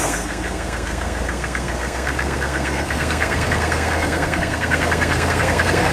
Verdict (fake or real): fake